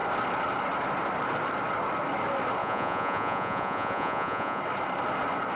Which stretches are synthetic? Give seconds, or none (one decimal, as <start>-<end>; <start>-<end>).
2.6-4.6